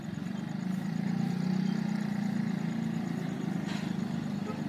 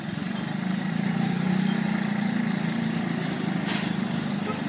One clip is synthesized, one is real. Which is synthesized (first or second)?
second